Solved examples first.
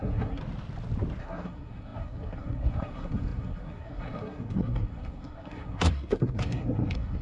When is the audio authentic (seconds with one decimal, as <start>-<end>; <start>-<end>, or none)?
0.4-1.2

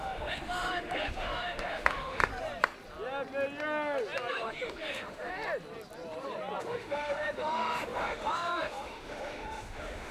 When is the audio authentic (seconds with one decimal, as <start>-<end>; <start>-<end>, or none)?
2.3-4.3; 5.3-6.6

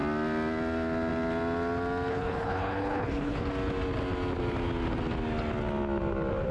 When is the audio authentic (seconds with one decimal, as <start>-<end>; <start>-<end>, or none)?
0.0-2.1; 3.4-6.5

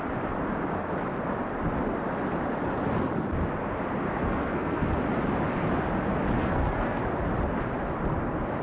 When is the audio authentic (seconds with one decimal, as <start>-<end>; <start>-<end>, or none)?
0.0-4.2; 4.9-6.4; 7.0-8.6